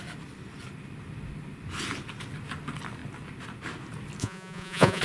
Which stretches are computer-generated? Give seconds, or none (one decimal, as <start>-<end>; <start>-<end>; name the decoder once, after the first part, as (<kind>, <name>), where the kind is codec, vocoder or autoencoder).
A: 4.2-5.0 (vocoder, Vocos)